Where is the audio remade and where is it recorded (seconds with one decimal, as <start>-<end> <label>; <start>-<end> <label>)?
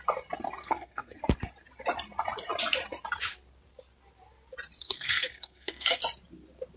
0.0-0.6 recorded; 0.6-1.2 remade; 1.2-4.8 recorded; 4.8-6.0 remade; 6.0-6.8 recorded